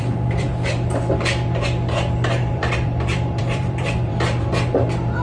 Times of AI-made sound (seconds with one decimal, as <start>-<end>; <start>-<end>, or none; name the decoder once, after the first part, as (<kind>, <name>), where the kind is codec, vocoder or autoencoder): 0.0-0.5 (vocoder, BigVGAN v2); 2.4-5.2